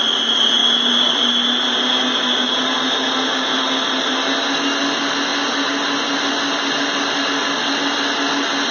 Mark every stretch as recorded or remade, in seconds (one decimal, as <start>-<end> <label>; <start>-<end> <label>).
0.0-8.7 recorded